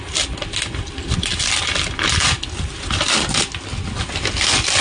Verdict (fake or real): real